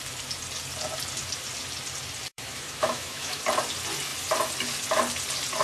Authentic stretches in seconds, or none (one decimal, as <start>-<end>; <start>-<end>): 0.0-2.3; 3.4-5.6